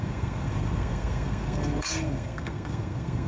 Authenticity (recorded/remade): remade